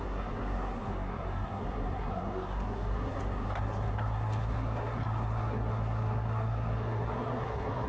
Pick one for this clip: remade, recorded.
remade